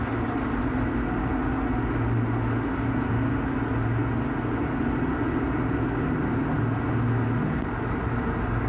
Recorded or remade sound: recorded